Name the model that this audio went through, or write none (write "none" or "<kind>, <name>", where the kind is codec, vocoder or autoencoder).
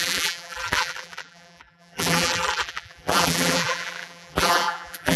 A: vocoder, BigVGAN v2